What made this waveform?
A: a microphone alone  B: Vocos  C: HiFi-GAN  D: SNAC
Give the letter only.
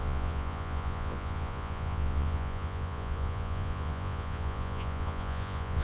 B